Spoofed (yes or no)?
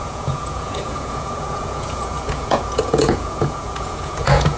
yes